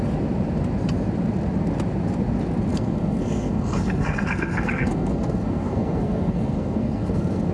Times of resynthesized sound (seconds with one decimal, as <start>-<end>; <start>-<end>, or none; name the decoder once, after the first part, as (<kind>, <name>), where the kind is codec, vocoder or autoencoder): 2.7-7.5 (codec, SNAC)